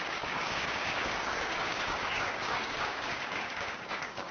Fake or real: fake